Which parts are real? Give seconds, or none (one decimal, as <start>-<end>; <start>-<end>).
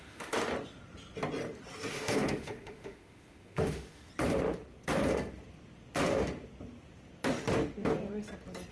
0.5-1.9; 4.1-8.7